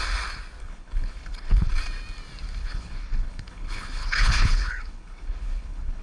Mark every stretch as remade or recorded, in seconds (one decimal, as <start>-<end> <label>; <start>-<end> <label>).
0.0-0.6 recorded; 0.6-1.7 remade; 1.7-2.6 recorded; 2.6-6.0 remade